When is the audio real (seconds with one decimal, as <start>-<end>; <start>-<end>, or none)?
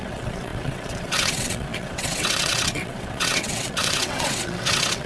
none